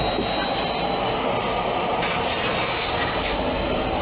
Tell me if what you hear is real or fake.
real